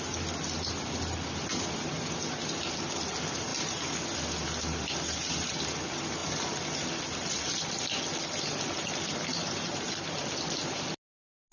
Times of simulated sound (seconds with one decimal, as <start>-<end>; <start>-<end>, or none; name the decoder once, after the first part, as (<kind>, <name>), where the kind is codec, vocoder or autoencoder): 9.3-9.9 (vocoder, BigVGAN v2)